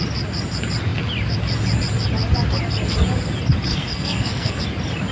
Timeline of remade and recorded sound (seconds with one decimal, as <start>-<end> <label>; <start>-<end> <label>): 0.0-3.7 recorded; 3.7-4.6 remade; 4.6-5.1 recorded